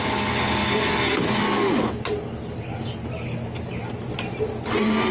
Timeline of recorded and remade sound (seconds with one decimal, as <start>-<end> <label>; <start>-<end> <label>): 0.0-5.1 recorded